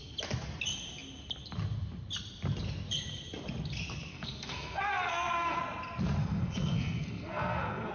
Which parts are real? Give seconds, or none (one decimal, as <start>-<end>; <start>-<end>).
0.0-4.1; 5.6-6.2